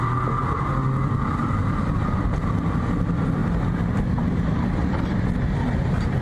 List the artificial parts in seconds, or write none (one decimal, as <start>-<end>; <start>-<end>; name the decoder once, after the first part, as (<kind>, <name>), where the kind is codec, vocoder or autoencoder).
0.0-3.4 (vocoder, BigVGAN v2); 4.0-6.2